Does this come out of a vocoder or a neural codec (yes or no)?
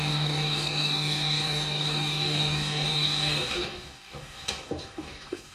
yes